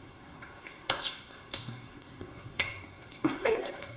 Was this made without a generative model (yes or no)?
no